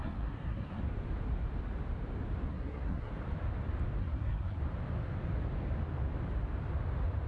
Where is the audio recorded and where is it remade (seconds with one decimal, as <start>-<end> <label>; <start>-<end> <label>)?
0.0-0.8 remade; 0.8-2.5 recorded; 2.5-3.1 remade; 3.1-4.0 recorded; 4.0-4.6 remade; 4.6-7.3 recorded